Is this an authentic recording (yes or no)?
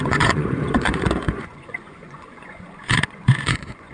no